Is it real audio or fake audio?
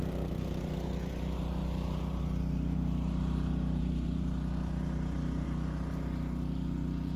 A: fake